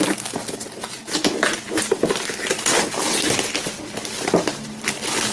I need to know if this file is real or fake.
real